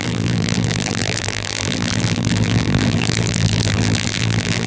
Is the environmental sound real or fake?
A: fake